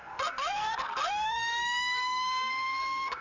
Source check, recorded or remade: remade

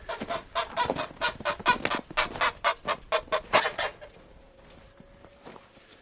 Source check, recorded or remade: recorded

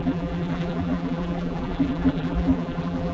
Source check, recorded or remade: remade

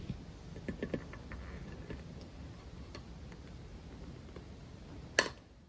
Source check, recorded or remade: recorded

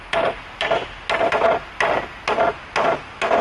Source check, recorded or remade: recorded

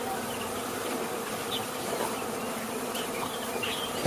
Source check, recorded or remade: recorded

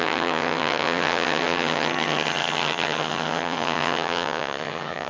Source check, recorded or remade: remade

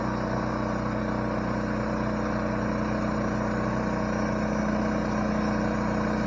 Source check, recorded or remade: recorded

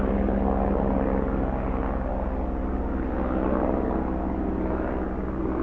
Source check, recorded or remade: recorded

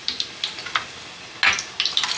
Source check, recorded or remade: recorded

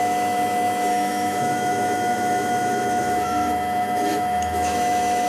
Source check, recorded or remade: remade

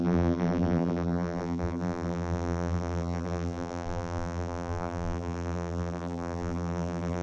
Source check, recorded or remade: remade